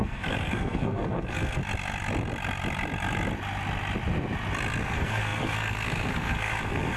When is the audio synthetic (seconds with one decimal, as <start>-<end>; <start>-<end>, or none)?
0.0-1.6; 4.8-7.0

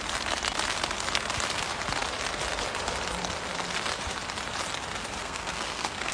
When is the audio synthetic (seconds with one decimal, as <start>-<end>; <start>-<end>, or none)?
5.2-6.1

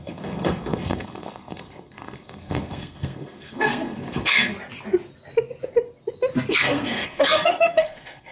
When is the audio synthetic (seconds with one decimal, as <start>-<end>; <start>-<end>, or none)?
0.0-4.5; 6.5-8.3

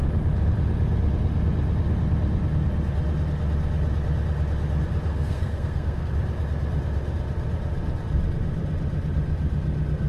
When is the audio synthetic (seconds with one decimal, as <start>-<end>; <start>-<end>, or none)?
5.1-6.1

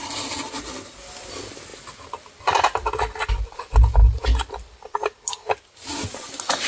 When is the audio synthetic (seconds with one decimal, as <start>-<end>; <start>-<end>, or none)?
none

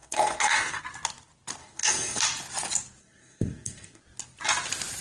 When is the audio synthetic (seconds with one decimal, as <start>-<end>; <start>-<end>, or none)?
0.0-0.8; 1.6-2.2; 3.0-4.0